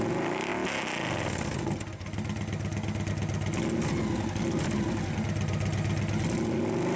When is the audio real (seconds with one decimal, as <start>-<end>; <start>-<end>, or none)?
0.0-7.0